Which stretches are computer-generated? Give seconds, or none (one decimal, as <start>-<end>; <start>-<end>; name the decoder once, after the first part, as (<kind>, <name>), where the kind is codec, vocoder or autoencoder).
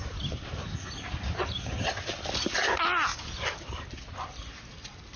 none